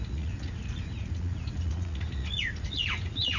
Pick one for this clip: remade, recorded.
remade